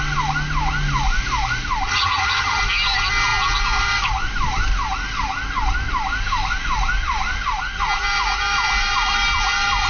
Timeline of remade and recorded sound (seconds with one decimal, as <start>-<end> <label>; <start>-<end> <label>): 0.0-1.9 recorded; 1.9-2.6 remade; 2.6-9.9 recorded